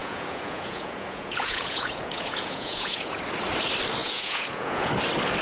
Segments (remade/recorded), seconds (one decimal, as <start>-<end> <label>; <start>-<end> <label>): 0.0-3.2 remade; 3.2-4.0 recorded; 4.0-4.9 remade; 4.9-5.4 recorded